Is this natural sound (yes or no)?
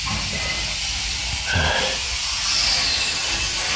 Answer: yes